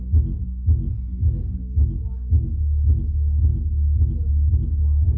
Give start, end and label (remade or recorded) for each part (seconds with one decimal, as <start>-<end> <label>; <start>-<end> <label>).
0.0-1.8 recorded; 1.8-2.5 remade; 2.5-5.2 recorded